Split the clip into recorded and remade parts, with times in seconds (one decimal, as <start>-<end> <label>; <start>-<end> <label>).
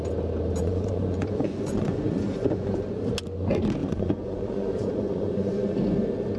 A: 0.0-0.6 recorded; 0.6-3.0 remade; 3.0-3.8 recorded; 3.8-5.8 remade; 5.8-6.4 recorded